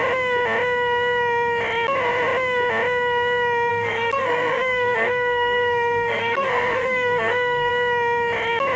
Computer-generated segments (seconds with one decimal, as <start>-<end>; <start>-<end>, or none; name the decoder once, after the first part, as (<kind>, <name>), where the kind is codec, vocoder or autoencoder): 3.7-7.7 (codec, SNAC)